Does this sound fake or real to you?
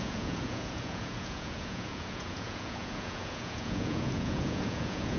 fake